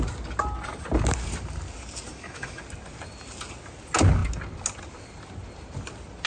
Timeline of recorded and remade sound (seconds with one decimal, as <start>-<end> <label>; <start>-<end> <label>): 0.0-2.1 recorded; 2.1-2.6 remade; 2.6-6.3 recorded

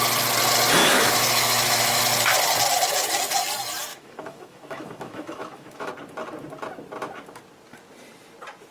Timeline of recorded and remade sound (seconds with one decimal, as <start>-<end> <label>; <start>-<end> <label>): 0.0-0.8 recorded; 0.8-2.0 remade; 2.0-3.9 recorded; 3.9-5.9 remade; 5.9-8.7 recorded

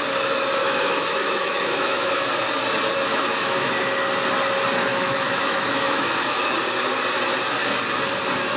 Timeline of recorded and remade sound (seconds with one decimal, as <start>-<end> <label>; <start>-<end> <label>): 0.0-0.6 recorded; 0.6-2.3 remade; 2.3-3.1 recorded; 3.1-3.7 remade; 3.7-4.9 recorded; 4.9-6.6 remade; 6.6-8.6 recorded